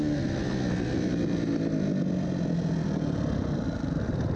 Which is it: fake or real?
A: real